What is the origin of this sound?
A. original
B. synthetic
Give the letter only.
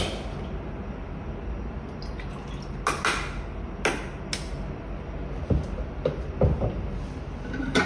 A